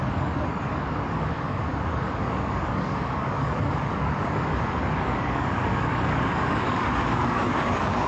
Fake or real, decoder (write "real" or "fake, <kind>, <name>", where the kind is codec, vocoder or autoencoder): fake, codec, DAC